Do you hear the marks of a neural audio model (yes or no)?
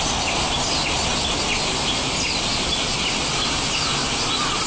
no